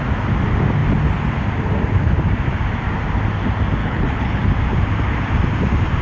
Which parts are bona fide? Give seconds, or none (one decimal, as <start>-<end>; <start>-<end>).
0.0-3.8; 4.4-6.0